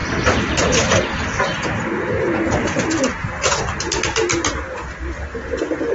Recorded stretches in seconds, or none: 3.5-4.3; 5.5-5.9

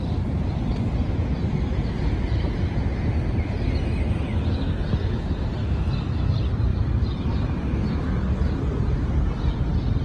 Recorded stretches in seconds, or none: 0.0-6.7; 7.2-10.0